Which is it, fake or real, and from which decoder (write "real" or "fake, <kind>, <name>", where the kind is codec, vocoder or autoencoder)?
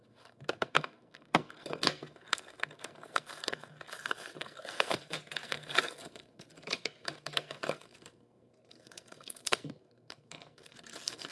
fake, codec, SNAC